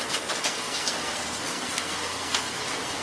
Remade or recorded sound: remade